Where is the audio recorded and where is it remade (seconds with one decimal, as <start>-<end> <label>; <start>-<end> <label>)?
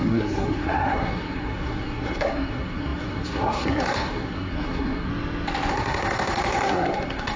0.0-5.1 remade; 5.1-5.7 recorded; 5.7-7.4 remade